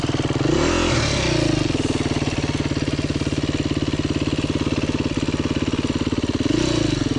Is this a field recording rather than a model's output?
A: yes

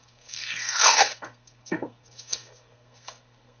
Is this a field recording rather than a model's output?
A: no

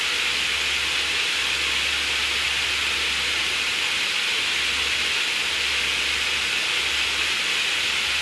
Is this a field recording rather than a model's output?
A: yes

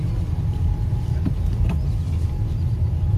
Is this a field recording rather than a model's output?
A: yes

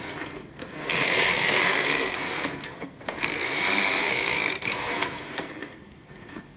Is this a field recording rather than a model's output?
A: no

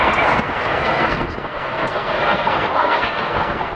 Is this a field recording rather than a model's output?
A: no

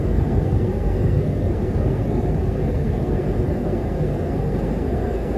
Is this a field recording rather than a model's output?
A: no